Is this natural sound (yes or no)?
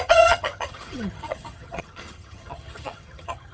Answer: no